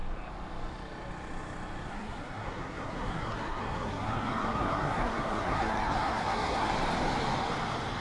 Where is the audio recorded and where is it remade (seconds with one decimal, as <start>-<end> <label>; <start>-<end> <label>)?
0.0-1.9 recorded; 1.9-6.7 remade; 6.7-8.0 recorded